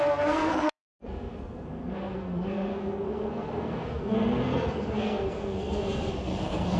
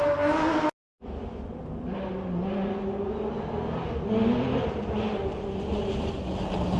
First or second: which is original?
second